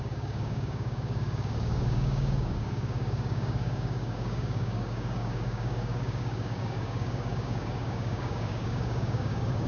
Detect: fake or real fake